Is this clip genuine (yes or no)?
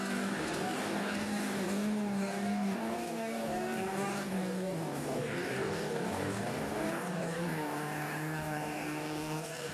no